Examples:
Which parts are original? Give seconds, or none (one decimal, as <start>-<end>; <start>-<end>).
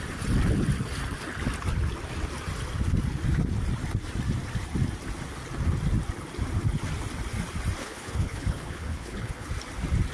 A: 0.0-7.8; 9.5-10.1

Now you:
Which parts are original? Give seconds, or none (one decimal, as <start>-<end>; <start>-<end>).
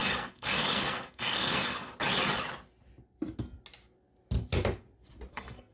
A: 1.9-5.3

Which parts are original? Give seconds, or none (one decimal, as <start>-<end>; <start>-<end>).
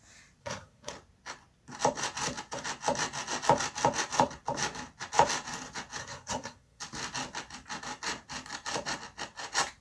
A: 0.0-0.4; 0.9-6.0; 6.8-9.8